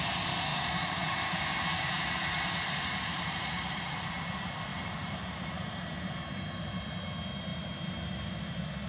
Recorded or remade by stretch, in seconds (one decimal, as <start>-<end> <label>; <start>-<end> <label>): 0.0-0.5 recorded; 0.5-4.1 remade; 4.1-4.7 recorded; 4.7-5.7 remade; 5.7-8.9 recorded